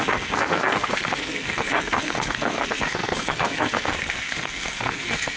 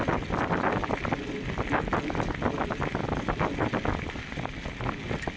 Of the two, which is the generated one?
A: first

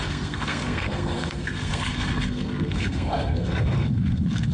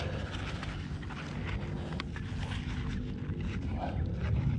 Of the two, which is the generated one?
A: first